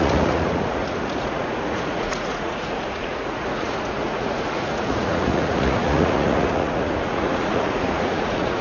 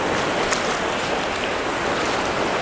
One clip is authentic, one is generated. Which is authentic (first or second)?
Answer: second